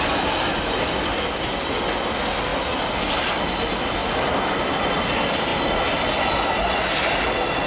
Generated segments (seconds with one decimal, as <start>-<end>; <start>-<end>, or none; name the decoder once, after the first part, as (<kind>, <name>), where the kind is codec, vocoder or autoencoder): none